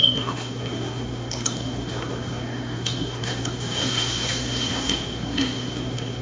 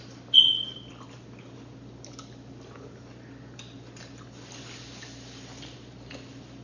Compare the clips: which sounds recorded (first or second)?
second